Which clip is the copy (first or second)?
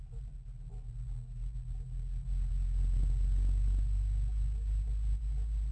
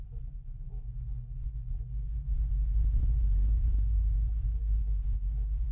second